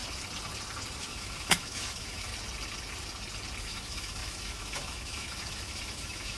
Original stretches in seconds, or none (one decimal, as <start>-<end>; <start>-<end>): 0.0-1.0; 2.3-3.6